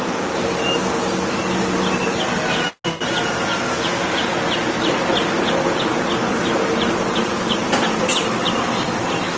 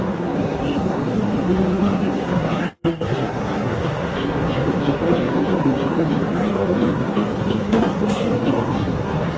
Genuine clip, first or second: first